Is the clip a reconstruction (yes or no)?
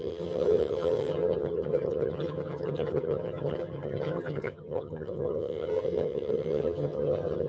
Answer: yes